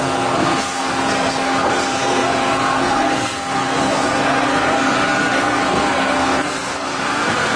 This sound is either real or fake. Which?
fake